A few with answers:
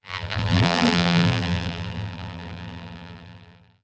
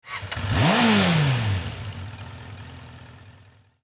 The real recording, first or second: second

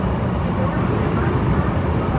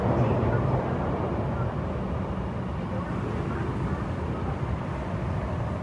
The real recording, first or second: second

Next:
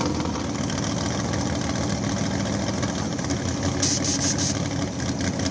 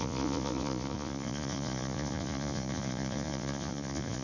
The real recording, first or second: first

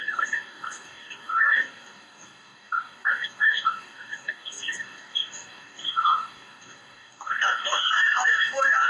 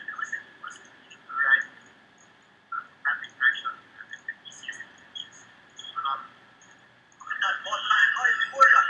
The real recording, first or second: second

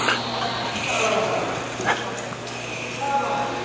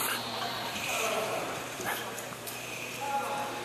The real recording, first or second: first